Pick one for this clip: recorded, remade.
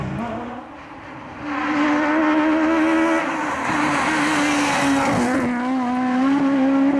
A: recorded